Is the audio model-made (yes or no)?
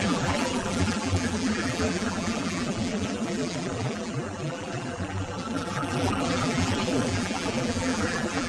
yes